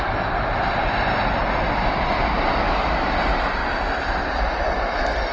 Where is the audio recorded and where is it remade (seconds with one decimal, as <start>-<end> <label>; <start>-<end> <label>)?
0.0-5.3 recorded